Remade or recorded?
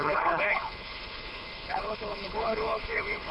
remade